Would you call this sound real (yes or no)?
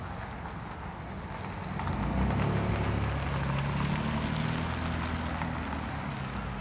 yes